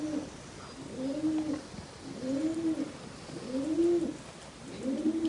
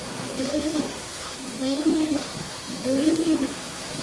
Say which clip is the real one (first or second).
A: first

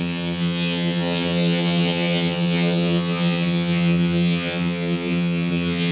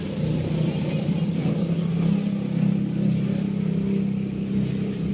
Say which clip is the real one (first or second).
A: second